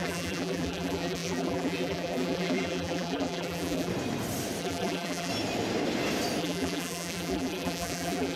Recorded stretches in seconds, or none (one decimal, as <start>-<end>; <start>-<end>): 3.9-4.6; 5.3-6.4